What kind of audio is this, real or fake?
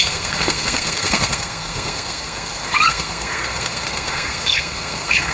fake